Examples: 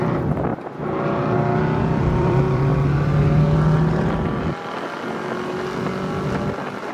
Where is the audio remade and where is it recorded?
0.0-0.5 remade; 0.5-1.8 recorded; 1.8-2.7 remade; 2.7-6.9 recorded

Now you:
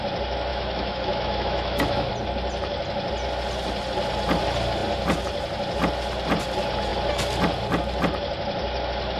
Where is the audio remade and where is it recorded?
0.0-0.5 recorded; 0.5-2.1 remade; 2.1-9.2 recorded

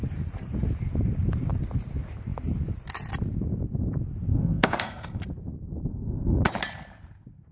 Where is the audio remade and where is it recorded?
0.0-4.3 recorded; 4.3-5.2 remade; 5.2-5.9 recorded; 5.9-6.4 remade; 6.4-7.5 recorded